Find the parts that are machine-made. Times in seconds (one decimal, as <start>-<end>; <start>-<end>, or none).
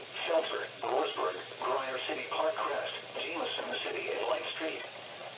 0.0-1.2; 3.6-5.4